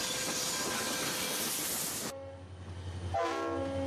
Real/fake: real